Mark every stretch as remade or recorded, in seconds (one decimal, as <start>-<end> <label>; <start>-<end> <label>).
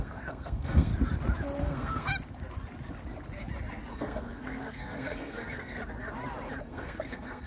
0.0-0.9 remade; 0.9-1.6 recorded; 1.6-2.1 remade; 2.1-3.9 recorded; 3.9-5.8 remade; 5.8-6.6 recorded; 6.6-7.5 remade